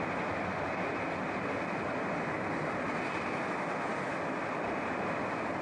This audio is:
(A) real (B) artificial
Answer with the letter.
A